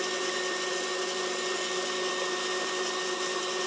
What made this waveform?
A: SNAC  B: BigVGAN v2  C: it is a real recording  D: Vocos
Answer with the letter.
C